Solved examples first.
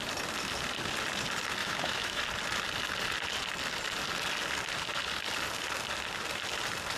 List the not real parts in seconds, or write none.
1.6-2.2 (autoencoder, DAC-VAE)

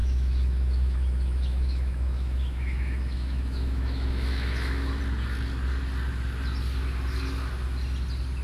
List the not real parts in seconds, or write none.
0.0-5.0 (autoencoder, DAC-VAE)

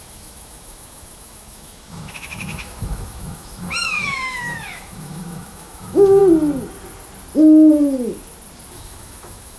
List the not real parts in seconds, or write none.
0.0-6.2 (autoencoder, DAC-VAE); 8.7-9.6

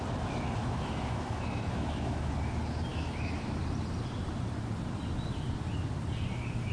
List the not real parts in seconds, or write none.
0.6-2.3 (autoencoder, DAC-VAE); 2.9-3.6